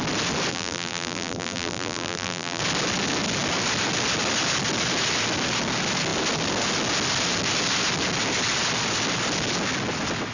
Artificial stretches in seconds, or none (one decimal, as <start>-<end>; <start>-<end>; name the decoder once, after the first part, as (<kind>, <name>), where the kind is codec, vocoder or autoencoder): 0.5-2.6 (vocoder, BigVGAN v2)